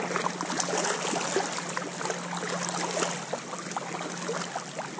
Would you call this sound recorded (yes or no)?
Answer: yes